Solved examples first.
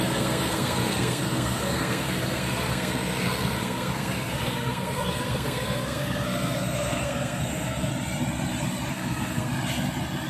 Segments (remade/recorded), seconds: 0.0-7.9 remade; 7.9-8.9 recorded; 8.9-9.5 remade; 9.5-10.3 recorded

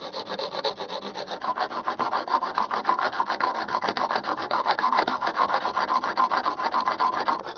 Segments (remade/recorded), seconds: 0.0-1.1 recorded; 1.1-1.6 remade; 1.6-2.2 recorded; 2.2-5.6 remade; 5.6-7.6 recorded

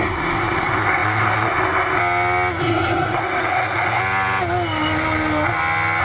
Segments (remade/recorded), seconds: 0.0-2.0 remade; 2.0-2.6 recorded; 2.6-4.0 remade; 4.0-6.0 recorded

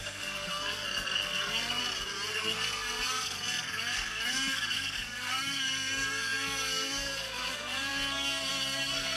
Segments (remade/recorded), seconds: 0.0-1.8 remade; 1.8-2.3 recorded; 2.3-9.2 remade

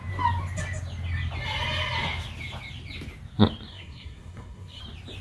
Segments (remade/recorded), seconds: 0.0-3.7 recorded; 3.7-4.8 remade; 4.8-5.2 recorded

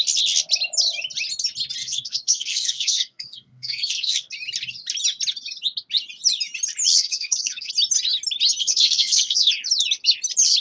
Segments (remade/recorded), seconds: 0.0-1.8 recorded; 1.8-4.3 remade; 4.3-6.9 recorded; 6.9-7.7 remade; 7.7-8.6 recorded; 8.6-9.5 remade; 9.5-10.6 recorded